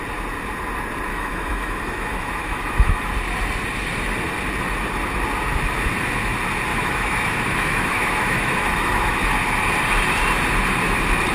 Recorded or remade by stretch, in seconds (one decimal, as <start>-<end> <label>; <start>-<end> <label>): 0.0-1.1 recorded; 1.1-3.1 remade; 3.1-6.7 recorded; 6.7-9.2 remade; 9.2-11.3 recorded